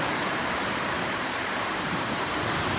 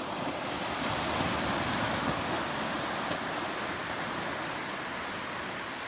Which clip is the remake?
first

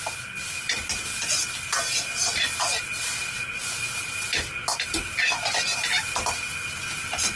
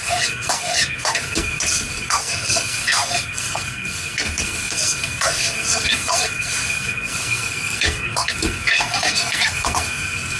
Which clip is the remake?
second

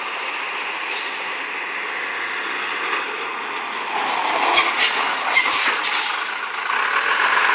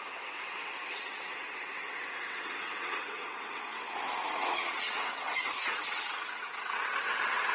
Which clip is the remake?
second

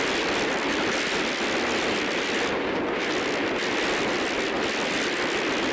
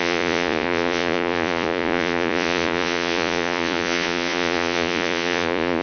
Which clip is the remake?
second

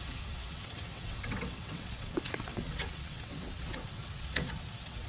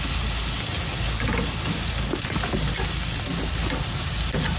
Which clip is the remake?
first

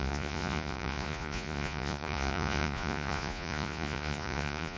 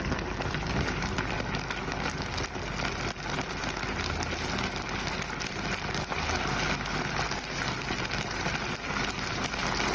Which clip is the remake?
first